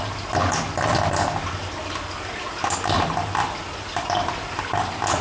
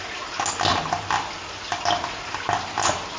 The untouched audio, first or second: second